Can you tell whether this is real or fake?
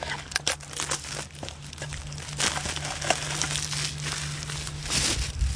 real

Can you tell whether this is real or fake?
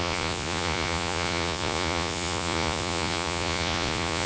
fake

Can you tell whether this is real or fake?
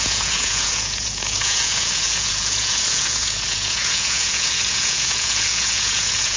fake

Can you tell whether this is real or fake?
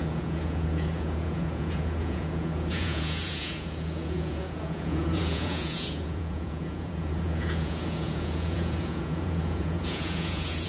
fake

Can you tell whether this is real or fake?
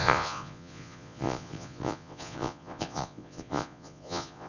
fake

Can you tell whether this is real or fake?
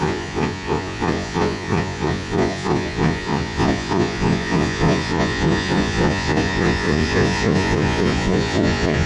fake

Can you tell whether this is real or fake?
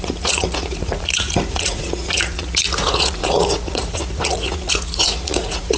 fake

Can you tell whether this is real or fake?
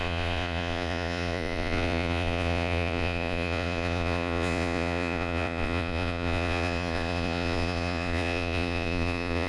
fake